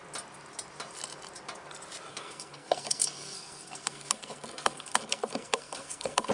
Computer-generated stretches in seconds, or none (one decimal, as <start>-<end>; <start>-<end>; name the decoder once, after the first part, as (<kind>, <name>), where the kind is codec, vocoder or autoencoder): 2.1-6.3 (codec, SNAC)